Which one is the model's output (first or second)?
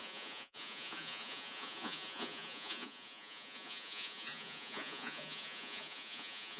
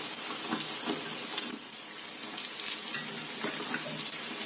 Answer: first